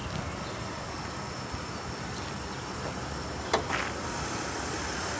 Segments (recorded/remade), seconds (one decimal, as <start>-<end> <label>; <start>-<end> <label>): 0.0-5.2 recorded